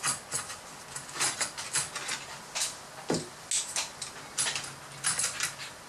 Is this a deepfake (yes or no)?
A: no